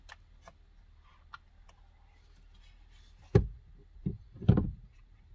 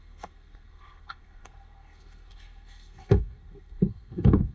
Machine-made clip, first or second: second